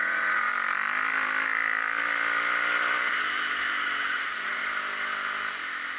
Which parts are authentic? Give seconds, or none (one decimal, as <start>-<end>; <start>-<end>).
0.5-4.1; 4.6-6.0